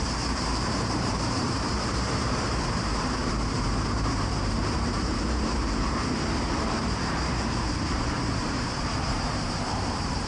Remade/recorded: remade